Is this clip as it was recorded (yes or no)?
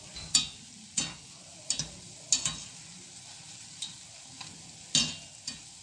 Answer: yes